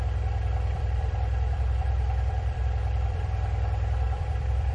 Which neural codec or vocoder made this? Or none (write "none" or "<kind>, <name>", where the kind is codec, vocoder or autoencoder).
vocoder, BigVGAN v2